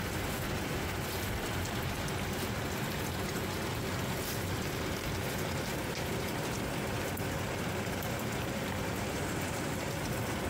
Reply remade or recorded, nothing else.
recorded